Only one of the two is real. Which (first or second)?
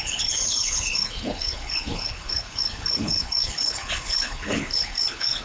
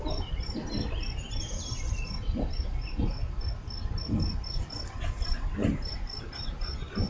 second